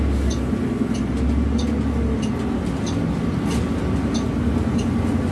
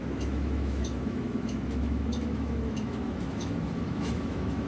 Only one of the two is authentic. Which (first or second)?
first